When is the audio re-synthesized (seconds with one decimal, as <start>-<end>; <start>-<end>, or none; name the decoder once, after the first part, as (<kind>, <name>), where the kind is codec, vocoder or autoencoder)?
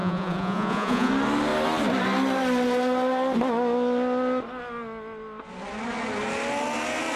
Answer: 0.0-1.1 (vocoder, Vocos)